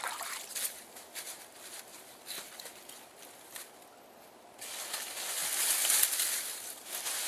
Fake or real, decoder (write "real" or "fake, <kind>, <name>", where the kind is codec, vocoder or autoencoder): real